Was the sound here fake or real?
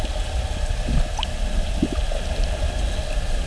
real